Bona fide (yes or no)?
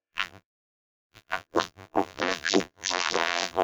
no